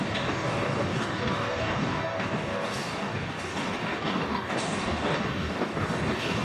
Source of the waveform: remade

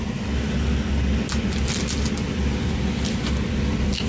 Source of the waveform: recorded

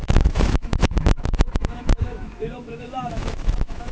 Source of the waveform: remade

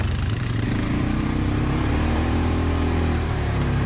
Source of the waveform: remade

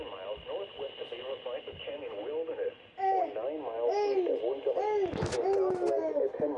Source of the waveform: recorded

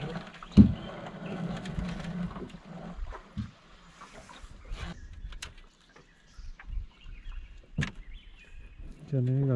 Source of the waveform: recorded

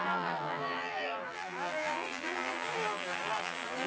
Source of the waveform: remade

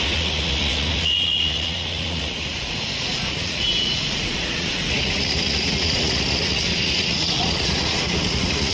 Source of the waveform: remade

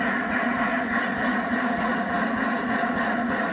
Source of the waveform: remade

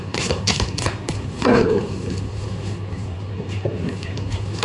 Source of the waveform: remade